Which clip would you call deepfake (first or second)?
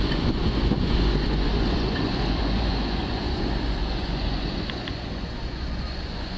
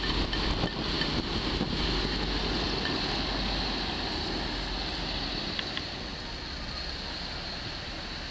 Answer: first